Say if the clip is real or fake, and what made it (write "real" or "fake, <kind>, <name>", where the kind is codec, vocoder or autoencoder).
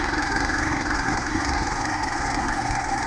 fake, codec, SNAC